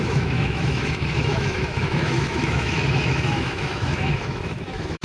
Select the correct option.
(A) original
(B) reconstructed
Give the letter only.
B